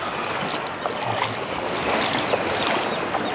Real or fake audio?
real